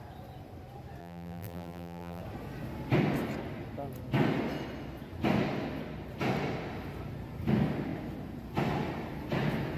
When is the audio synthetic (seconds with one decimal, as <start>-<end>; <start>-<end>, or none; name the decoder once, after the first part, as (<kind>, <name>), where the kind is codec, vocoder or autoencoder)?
1.0-2.2 (vocoder, BigVGAN v2)